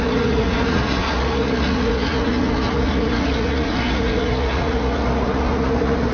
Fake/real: fake